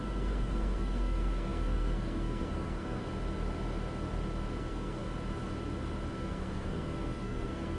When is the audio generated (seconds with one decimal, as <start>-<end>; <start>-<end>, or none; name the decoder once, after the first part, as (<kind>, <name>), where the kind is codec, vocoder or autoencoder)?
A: 0.0-3.0 (codec, SNAC); 4.6-5.0; 6.1-7.8